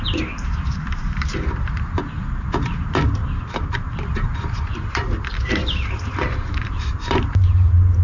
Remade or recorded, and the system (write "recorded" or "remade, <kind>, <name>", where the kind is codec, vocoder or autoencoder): remade, vocoder, BigVGAN v2